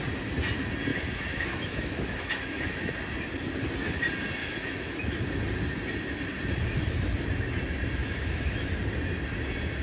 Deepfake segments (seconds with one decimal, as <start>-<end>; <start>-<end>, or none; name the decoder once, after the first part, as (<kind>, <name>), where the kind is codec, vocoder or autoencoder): 0.9-2.9 (autoencoder, DAC-VAE); 4.4-5.2; 8.0-8.7